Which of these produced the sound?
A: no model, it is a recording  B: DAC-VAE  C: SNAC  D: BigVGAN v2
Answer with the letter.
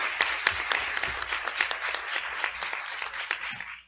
A